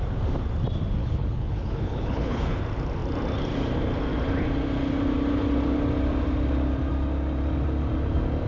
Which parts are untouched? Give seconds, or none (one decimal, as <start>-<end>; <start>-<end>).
0.0-1.0; 2.6-8.5